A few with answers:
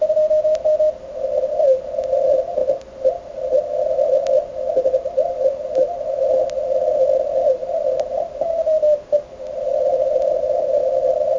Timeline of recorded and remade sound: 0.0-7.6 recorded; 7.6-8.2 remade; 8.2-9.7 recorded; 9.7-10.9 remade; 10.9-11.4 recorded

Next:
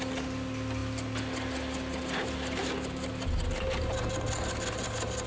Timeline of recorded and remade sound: 0.0-5.3 recorded